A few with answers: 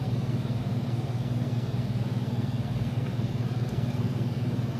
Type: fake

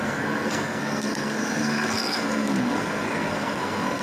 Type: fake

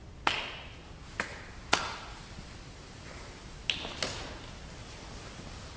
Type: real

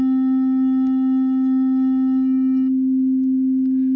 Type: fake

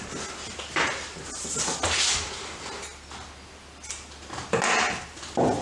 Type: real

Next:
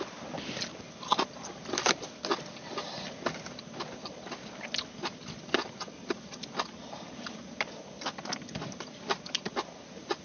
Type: real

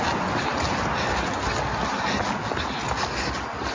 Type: real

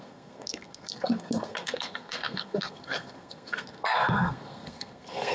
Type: fake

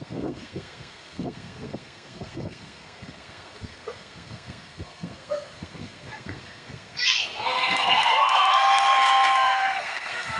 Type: fake